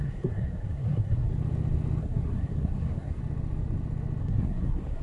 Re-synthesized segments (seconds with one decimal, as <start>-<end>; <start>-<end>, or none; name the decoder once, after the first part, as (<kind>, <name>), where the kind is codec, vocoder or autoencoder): 0.0-1.3 (codec, SNAC); 2.0-3.2; 4.2-5.0